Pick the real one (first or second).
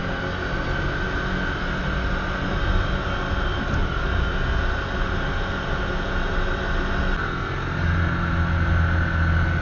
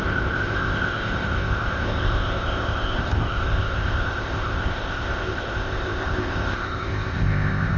first